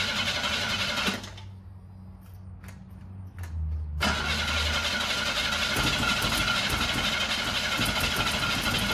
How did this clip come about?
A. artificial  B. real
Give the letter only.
B